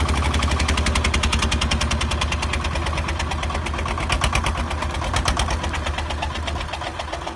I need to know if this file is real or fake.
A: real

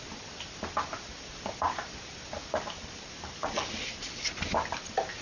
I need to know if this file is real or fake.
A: real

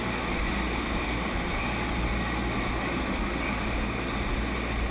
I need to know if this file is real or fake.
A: real